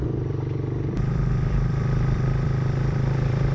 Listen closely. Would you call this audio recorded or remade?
remade